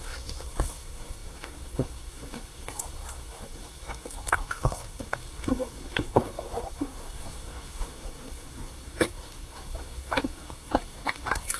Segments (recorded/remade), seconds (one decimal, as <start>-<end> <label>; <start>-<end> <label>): 0.0-11.6 remade